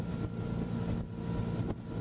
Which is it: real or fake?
real